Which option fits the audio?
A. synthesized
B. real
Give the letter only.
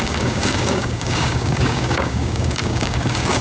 A